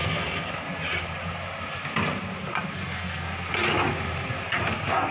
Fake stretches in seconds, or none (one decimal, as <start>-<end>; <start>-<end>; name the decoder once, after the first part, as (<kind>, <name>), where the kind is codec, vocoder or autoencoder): 0.0-0.5 (codec, SNAC); 2.8-3.5